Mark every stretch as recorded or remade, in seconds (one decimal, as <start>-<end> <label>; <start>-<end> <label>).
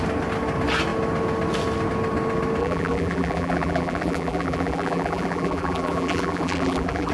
0.0-2.6 recorded; 2.6-7.1 remade